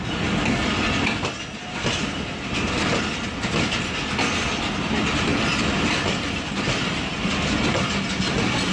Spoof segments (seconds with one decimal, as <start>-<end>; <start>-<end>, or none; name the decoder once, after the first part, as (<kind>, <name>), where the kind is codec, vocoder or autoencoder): none

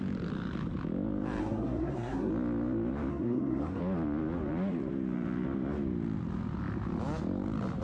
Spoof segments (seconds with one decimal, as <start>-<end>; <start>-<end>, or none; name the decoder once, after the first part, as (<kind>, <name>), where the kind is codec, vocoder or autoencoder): 1.4-2.3 (codec, SNAC); 3.1-3.8